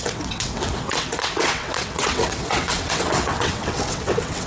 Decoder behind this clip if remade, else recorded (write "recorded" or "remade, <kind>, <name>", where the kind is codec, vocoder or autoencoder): remade, vocoder, WaveNeXt